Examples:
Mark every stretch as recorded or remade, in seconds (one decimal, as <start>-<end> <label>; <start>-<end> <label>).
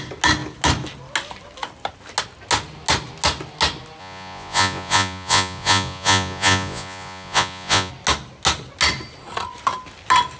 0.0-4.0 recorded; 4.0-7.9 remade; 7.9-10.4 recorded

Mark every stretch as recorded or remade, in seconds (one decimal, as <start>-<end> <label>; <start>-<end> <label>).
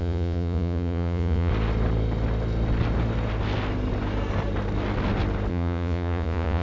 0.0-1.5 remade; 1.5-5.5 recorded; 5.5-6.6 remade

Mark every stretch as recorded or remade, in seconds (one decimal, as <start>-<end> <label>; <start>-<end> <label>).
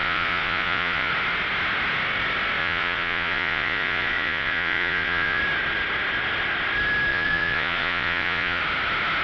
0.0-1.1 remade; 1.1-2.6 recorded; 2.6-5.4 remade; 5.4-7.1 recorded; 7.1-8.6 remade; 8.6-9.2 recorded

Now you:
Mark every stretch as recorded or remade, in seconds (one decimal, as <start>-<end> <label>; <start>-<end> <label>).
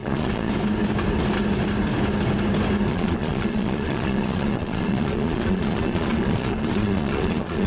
0.0-0.5 remade; 0.5-2.9 recorded; 2.9-7.7 remade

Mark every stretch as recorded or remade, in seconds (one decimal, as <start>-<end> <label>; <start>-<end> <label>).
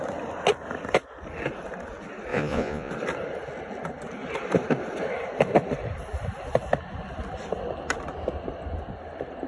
0.0-2.3 recorded; 2.3-2.9 remade; 2.9-9.5 recorded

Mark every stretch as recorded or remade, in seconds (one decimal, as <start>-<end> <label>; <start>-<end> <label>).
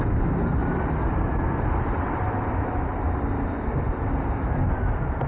0.0-5.3 recorded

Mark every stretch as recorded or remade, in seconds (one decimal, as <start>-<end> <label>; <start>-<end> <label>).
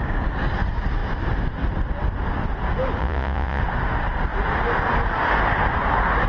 0.0-3.0 recorded; 3.0-3.6 remade; 3.6-6.3 recorded